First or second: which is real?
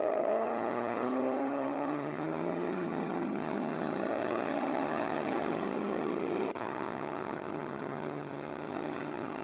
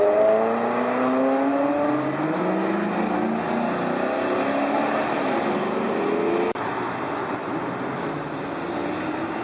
second